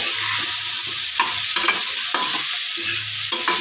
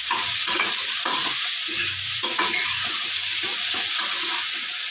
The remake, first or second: second